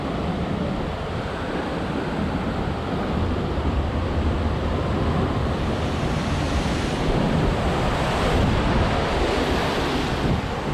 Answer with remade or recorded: remade